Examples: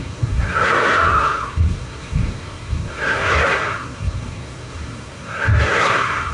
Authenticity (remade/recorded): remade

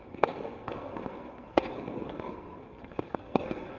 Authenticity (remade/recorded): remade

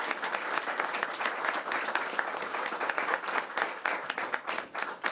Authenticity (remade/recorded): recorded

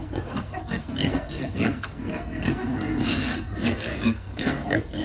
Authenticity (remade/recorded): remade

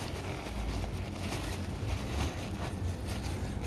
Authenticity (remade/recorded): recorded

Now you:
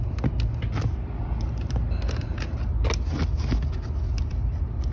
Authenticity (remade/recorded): recorded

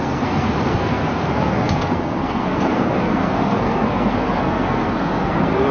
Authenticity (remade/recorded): remade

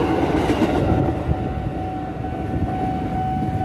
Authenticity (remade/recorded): recorded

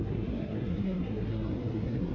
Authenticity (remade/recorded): remade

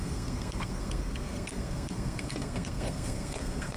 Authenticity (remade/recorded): remade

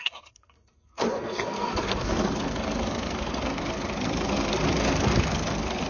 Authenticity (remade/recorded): remade